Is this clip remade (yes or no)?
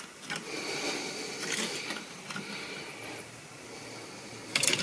no